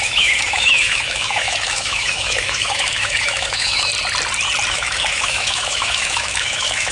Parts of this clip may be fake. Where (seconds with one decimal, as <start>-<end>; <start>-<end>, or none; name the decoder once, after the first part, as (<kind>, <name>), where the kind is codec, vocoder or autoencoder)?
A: 0.0-3.9 (autoencoder, DAC-VAE); 4.7-6.9